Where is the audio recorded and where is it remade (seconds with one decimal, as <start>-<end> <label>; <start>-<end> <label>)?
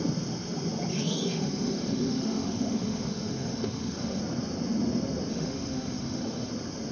0.0-0.9 recorded; 0.9-4.2 remade; 4.2-5.3 recorded; 5.3-6.5 remade; 6.5-6.9 recorded